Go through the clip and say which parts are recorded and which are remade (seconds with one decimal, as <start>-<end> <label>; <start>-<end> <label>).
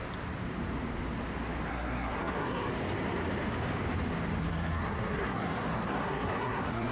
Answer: 0.0-1.7 recorded; 1.7-2.7 remade; 2.7-4.4 recorded; 4.4-6.9 remade